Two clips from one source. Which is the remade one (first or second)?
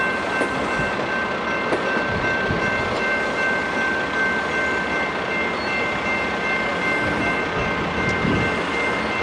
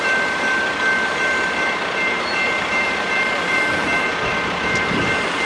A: second